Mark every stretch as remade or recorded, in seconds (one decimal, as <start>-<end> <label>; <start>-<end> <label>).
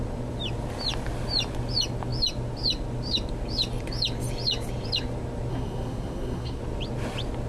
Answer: 0.0-5.5 recorded; 5.5-6.6 remade; 6.6-7.5 recorded